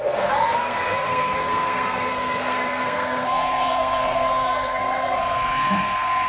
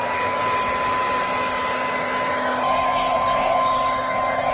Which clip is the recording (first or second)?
second